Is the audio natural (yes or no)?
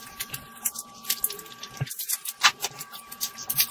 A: no